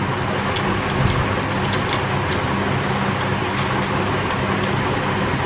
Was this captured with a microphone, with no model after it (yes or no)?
yes